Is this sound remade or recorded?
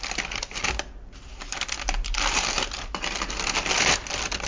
recorded